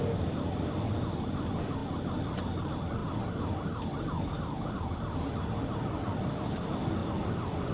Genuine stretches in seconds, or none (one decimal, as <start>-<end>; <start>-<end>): 0.0-7.7